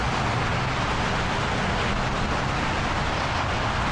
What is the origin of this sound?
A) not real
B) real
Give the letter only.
B